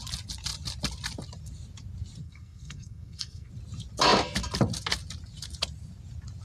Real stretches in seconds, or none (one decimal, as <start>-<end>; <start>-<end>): 0.0-2.2; 3.5-6.4